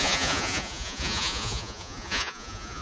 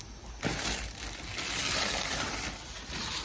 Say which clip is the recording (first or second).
second